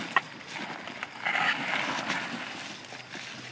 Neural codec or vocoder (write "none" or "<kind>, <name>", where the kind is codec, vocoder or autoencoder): none